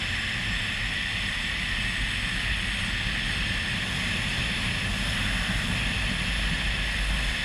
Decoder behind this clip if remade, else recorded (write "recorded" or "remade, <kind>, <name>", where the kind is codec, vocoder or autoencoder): recorded